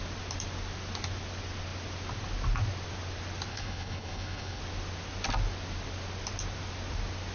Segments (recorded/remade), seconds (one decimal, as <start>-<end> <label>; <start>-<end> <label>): 0.0-3.5 recorded; 3.5-4.6 remade; 4.6-7.3 recorded